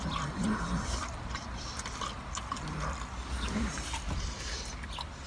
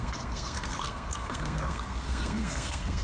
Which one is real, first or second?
first